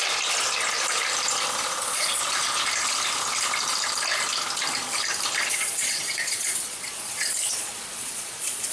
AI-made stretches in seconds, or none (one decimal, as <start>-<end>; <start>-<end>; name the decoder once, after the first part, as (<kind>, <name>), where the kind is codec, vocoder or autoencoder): 1.8-2.2 (vocoder, Vocos); 5.5-8.7